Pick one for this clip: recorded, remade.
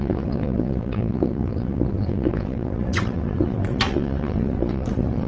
remade